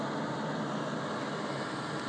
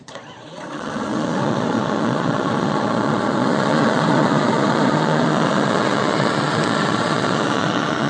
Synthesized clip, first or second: second